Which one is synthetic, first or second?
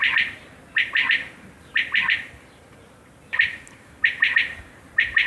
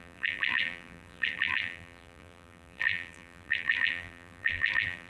second